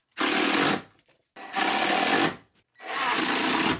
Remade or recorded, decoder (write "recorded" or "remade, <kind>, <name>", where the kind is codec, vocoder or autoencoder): recorded